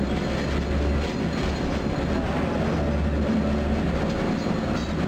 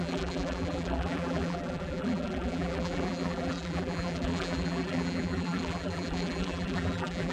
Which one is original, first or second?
first